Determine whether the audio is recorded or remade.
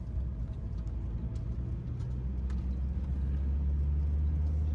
recorded